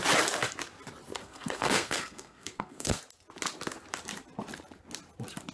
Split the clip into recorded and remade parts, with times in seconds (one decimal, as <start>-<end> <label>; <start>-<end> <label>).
0.0-1.2 recorded; 1.2-3.0 remade; 3.0-5.5 recorded